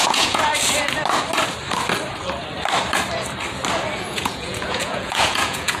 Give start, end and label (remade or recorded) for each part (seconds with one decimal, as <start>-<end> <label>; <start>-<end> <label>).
0.0-0.5 remade; 0.5-4.0 recorded; 4.0-5.8 remade